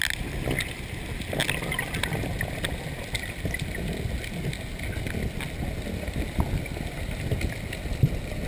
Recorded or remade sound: recorded